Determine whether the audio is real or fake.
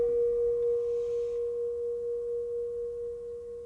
real